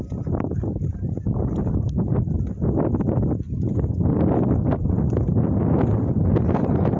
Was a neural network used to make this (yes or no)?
no